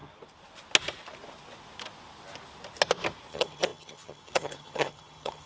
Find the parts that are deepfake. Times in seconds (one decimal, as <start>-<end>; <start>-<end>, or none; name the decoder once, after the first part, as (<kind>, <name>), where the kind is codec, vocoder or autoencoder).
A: 3.3-5.5 (vocoder, HiFi-GAN)